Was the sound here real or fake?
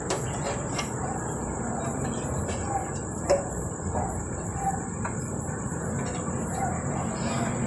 fake